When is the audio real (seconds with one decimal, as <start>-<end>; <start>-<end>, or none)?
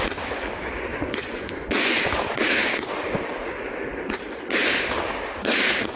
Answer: 0.0-0.9; 2.0-6.0